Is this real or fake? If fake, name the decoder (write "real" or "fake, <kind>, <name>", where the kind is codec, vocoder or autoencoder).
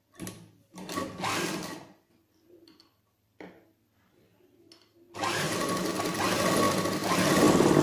real